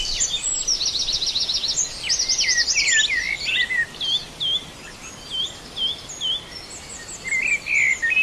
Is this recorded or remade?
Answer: recorded